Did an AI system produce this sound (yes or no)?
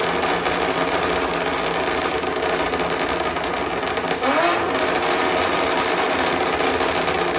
no